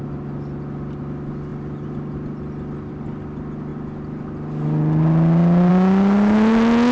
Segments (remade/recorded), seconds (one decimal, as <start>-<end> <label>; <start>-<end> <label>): 0.0-6.9 recorded